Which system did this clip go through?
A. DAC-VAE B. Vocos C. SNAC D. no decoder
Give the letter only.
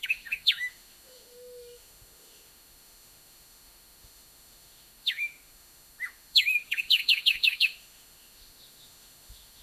A